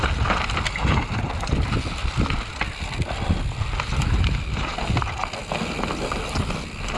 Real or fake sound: real